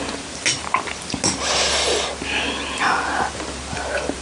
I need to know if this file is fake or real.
real